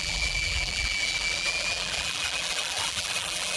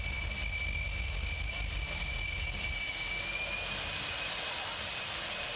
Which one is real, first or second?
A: second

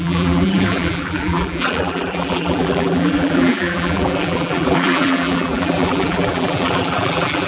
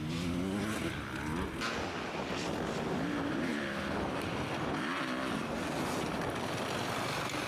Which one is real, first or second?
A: second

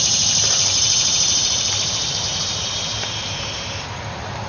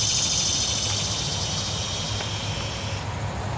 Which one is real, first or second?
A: second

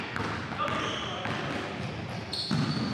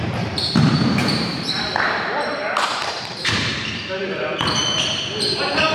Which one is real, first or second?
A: first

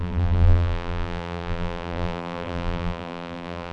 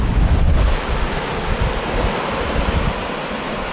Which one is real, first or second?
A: second